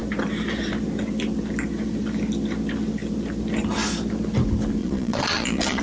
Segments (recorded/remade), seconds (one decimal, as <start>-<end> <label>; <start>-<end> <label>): 0.0-4.8 recorded; 4.8-5.8 remade